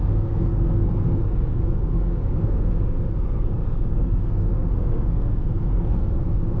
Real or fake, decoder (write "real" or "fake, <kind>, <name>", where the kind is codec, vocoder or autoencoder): fake, codec, SNAC